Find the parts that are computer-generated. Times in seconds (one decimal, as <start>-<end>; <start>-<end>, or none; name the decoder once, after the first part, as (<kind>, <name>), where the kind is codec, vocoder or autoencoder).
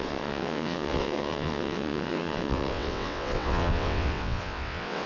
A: 0.0-5.1 (vocoder, WaveNeXt)